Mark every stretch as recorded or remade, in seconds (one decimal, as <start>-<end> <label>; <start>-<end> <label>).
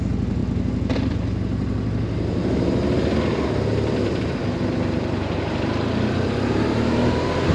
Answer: 0.0-7.5 recorded